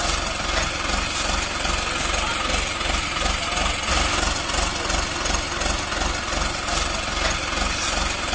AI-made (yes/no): no